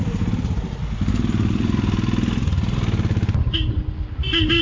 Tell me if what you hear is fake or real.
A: real